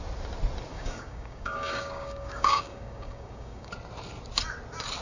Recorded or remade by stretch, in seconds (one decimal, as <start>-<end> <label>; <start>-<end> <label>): 0.0-0.7 recorded; 0.7-3.7 remade; 3.7-5.0 recorded

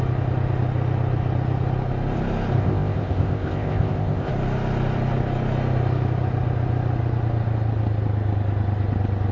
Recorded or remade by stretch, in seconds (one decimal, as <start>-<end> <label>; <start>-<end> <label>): 0.0-2.6 recorded; 2.6-4.3 remade; 4.3-9.3 recorded